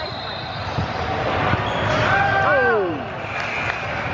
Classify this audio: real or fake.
real